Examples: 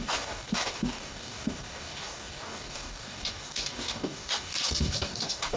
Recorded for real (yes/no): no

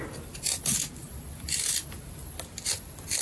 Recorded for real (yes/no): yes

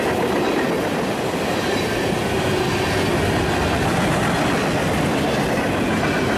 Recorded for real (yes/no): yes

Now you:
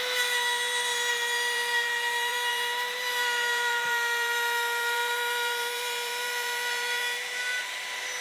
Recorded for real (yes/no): no